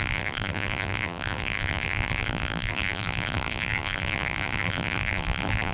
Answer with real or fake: fake